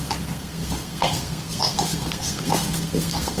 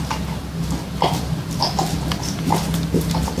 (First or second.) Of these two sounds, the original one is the second